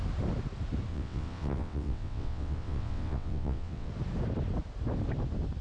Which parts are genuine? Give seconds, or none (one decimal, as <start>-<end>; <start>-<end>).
0.0-0.9; 3.9-5.6